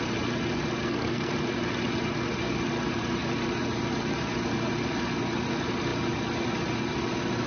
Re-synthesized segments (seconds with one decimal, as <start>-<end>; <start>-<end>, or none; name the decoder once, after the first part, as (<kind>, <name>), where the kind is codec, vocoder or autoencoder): 0.8-1.3 (codec, SNAC)